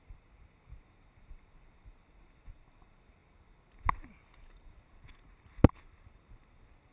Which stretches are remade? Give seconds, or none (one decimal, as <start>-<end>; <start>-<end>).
none